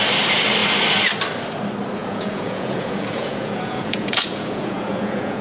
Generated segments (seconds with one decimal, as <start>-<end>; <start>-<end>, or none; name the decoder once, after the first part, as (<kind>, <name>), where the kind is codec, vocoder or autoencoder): 2.0-5.4 (vocoder, Vocos)